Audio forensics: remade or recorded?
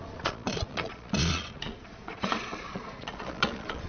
remade